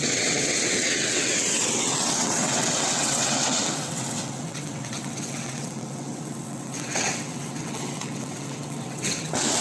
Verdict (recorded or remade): remade